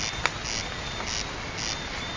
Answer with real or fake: real